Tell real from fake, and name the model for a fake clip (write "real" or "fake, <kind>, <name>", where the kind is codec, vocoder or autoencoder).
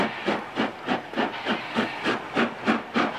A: real